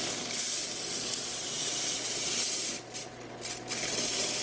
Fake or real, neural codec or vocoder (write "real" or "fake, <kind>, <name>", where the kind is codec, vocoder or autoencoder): real